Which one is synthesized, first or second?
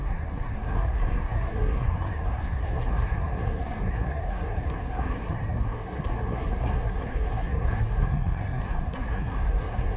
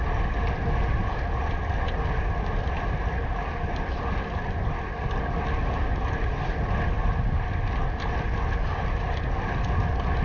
first